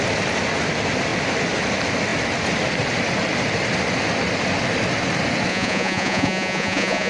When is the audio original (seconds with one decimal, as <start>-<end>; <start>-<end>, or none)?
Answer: 0.0-5.5